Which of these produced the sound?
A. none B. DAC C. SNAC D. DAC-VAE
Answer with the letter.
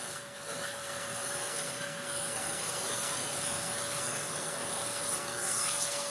C